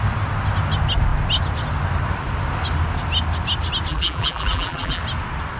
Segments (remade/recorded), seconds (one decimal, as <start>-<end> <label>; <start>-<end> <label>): 0.0-3.9 recorded; 3.9-5.0 remade; 5.0-5.6 recorded